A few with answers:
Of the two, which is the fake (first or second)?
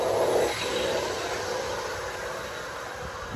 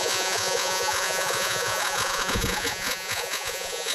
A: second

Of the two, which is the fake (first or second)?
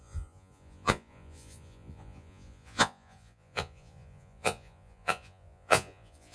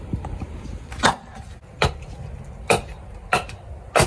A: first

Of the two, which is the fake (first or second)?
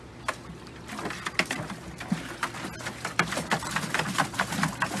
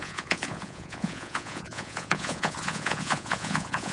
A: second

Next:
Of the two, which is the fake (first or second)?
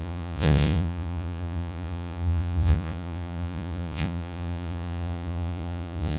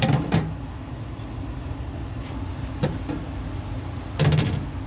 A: first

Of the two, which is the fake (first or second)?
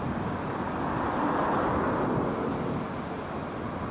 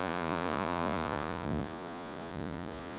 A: second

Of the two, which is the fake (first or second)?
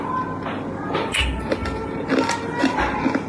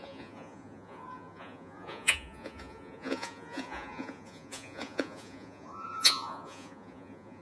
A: second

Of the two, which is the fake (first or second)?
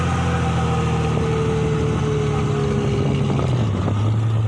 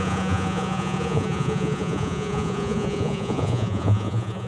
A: second